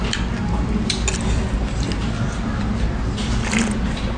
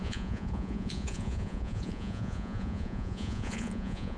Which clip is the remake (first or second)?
second